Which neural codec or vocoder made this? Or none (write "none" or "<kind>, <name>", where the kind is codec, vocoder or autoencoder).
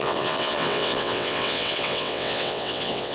vocoder, WaveNeXt